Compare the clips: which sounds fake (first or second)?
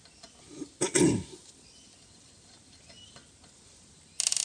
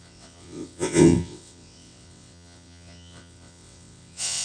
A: second